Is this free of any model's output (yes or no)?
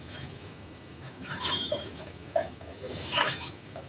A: no